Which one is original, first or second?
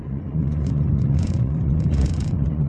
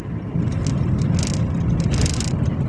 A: second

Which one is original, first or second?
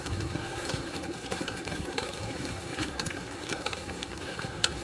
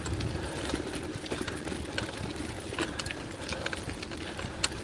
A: second